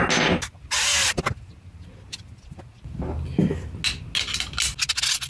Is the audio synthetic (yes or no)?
no